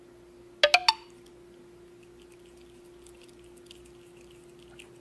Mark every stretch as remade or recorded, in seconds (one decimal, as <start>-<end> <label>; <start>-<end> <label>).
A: 0.0-5.0 recorded